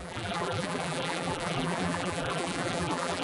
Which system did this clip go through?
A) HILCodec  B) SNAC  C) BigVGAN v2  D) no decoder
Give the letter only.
C